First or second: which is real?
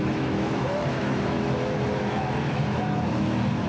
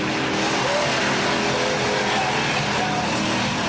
second